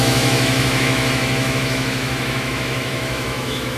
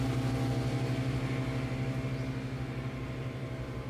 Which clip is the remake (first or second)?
first